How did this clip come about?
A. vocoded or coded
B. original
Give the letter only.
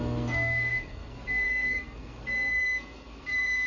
A